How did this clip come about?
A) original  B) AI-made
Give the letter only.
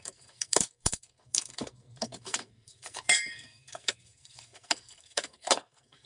B